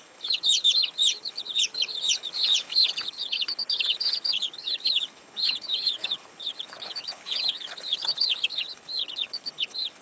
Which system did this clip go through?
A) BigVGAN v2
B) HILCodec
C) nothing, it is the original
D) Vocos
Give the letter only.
B